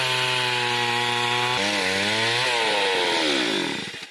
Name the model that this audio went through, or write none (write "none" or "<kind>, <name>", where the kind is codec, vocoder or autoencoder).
none